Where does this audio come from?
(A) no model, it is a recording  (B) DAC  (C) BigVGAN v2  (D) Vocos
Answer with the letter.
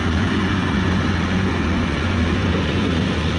D